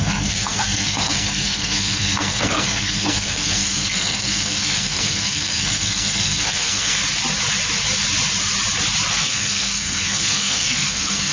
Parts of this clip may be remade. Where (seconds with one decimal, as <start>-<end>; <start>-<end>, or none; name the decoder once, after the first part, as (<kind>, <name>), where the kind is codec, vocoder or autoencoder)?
0.0-7.0 (codec, SNAC); 9.1-11.3